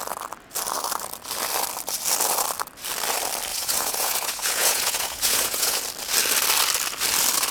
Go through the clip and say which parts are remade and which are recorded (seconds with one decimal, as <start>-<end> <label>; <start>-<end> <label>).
0.0-3.5 recorded; 3.5-5.8 remade; 5.8-7.5 recorded